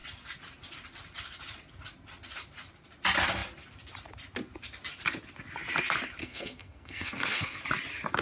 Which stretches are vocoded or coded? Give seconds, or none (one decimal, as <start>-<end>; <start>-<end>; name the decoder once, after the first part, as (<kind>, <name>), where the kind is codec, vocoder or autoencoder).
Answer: 6.2-7.6 (codec, SNAC)